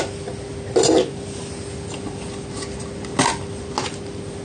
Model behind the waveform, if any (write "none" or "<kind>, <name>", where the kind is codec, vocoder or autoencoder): none